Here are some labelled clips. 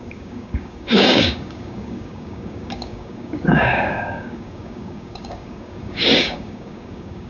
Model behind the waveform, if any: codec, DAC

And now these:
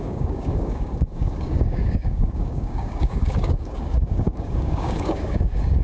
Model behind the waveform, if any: codec, DAC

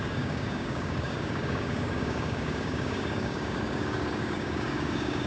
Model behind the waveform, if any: codec, DAC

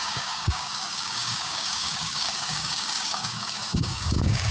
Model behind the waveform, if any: codec, DAC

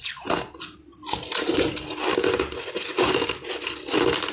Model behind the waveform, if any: none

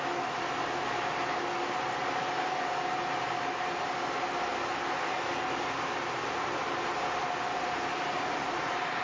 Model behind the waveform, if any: none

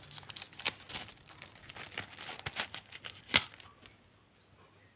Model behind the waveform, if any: none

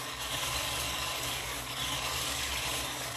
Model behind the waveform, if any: codec, DAC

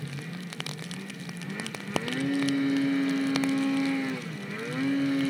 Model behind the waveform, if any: none